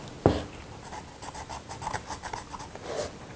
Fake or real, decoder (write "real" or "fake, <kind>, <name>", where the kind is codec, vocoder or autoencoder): real